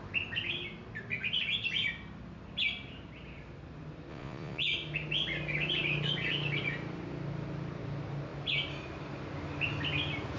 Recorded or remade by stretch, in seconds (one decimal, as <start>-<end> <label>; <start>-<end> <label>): 0.0-4.1 recorded; 4.1-4.6 remade; 4.6-10.4 recorded